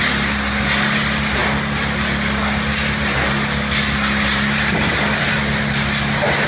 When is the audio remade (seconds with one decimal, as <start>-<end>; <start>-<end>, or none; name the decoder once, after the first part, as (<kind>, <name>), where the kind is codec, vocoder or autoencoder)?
none